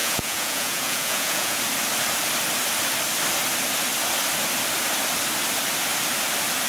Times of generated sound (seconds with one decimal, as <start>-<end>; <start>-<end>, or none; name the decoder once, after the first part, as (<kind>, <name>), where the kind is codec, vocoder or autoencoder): 0.0-1.6 (vocoder, Vocos)